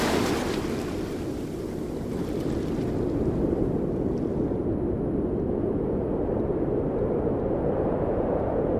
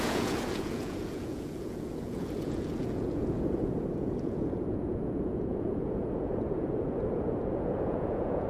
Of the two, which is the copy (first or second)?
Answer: second